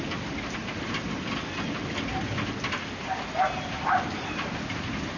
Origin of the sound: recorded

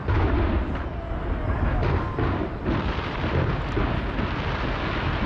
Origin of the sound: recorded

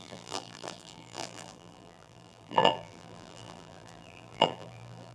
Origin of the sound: remade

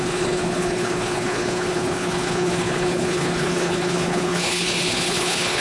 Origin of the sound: remade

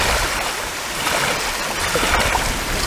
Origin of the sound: recorded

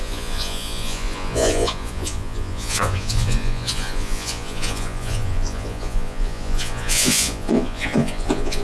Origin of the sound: remade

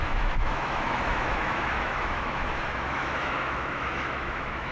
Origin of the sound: remade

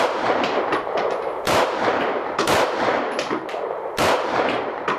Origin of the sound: remade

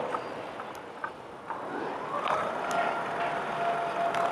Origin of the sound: recorded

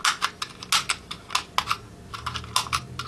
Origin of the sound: recorded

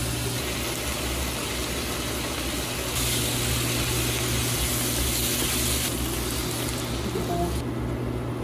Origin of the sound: recorded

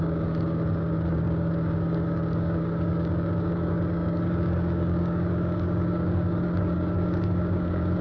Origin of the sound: remade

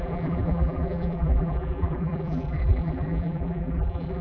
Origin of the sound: remade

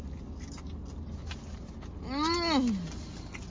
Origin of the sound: recorded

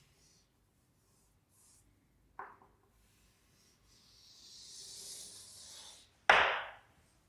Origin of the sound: recorded